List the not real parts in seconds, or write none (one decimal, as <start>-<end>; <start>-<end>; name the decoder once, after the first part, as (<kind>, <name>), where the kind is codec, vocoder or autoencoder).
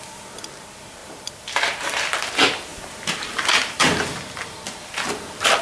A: 1.0-2.3 (vocoder, BigVGAN v2); 2.7-4.2